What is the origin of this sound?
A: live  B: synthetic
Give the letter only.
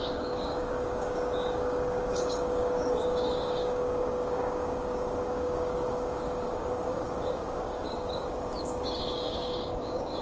B